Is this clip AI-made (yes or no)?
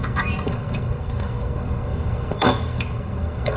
yes